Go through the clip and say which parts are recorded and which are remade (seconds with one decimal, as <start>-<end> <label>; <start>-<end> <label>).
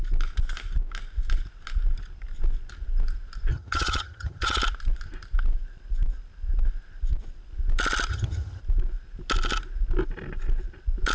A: 0.0-3.5 recorded; 3.5-4.6 remade; 4.6-8.1 recorded; 8.1-8.6 remade; 8.6-11.1 recorded